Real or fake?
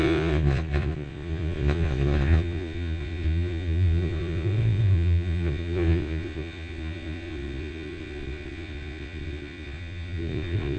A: fake